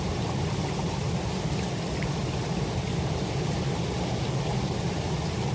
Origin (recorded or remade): recorded